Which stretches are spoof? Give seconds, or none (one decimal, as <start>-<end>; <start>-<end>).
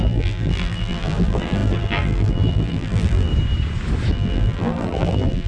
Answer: 0.0-3.3; 4.1-5.5